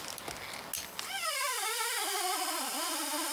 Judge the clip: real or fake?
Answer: real